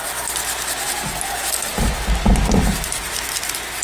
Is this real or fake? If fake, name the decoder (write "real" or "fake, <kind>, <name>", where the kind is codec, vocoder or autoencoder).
real